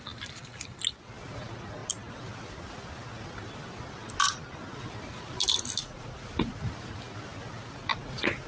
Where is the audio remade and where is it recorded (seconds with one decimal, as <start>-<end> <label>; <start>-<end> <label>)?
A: 0.0-5.8 recorded; 5.8-6.6 remade; 6.6-7.9 recorded; 7.9-8.5 remade